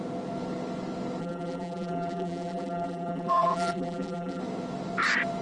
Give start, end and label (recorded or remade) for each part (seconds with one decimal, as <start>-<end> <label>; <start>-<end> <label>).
0.0-1.2 recorded; 1.2-4.4 remade; 4.4-5.4 recorded